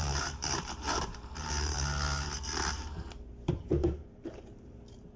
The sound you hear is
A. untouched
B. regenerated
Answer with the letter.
B